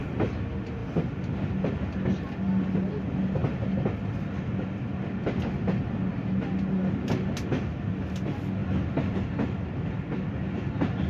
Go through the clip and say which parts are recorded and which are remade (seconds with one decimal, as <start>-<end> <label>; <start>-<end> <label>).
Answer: 0.0-0.8 recorded; 0.8-2.4 remade; 2.4-3.4 recorded; 3.4-4.9 remade; 4.9-11.1 recorded